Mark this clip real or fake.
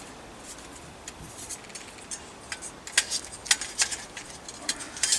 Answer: real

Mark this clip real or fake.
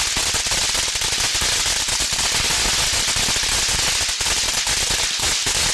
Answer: real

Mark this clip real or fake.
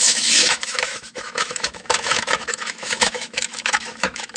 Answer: fake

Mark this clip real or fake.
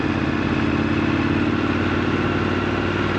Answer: real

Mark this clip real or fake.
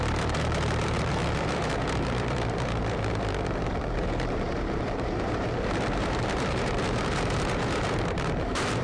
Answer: fake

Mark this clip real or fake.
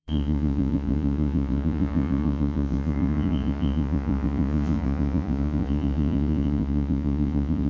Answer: fake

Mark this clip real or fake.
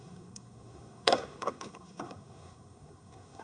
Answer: fake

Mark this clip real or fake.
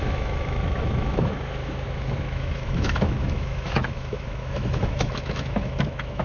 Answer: fake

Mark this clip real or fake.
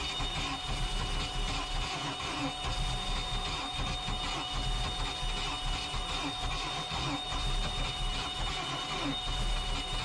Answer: real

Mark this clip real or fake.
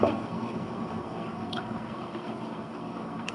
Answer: fake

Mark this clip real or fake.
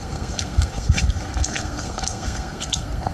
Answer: fake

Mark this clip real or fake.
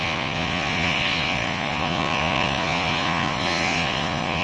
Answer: fake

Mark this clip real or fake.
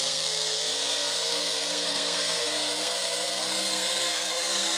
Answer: fake